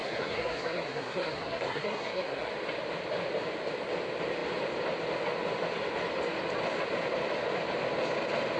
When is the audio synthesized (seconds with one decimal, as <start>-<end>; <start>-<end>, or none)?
0.0-2.5

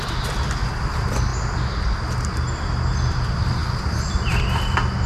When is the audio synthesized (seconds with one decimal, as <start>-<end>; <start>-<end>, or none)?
0.0-1.3; 3.1-5.1

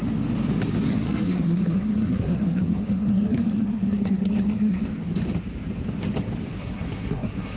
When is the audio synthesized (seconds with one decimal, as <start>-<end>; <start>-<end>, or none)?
0.9-4.8; 6.5-7.6

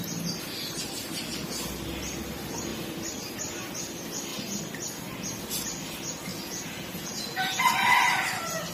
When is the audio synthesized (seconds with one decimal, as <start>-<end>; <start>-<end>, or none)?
6.3-7.6

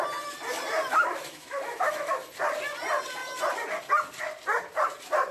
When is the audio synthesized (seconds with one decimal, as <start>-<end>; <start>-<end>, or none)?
1.0-2.3

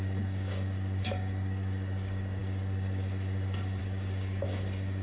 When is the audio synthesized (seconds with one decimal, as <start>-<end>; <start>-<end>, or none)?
0.0-5.0

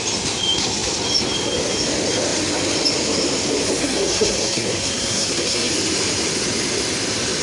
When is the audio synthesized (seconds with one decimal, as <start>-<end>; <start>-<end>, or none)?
3.8-5.7

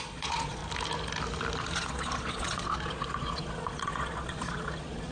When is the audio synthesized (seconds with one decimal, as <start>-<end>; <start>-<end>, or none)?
0.0-0.6; 1.6-5.1